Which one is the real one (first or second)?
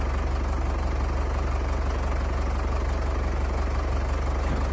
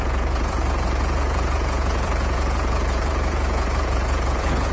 first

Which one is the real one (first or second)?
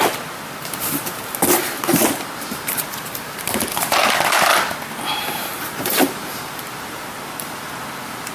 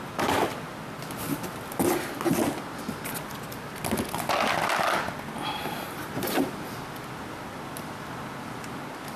second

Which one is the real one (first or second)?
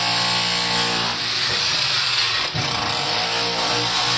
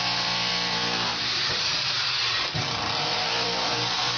first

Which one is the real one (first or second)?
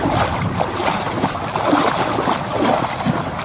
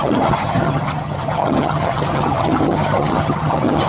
first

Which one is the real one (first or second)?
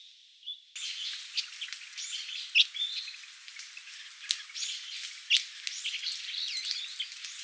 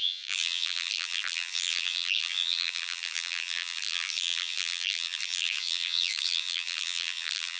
first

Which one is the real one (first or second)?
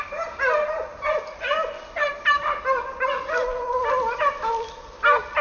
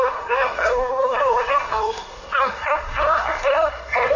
first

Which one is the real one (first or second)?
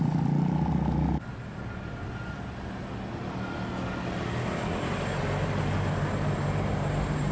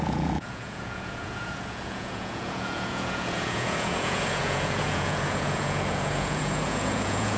first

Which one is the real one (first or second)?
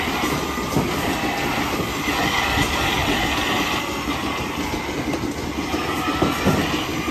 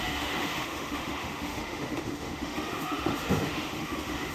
first